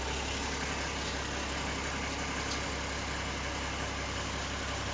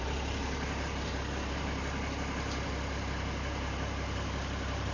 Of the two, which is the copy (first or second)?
second